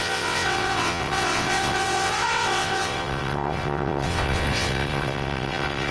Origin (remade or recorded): remade